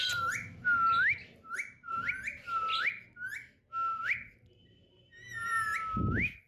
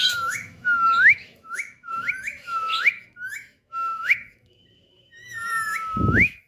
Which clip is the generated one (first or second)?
second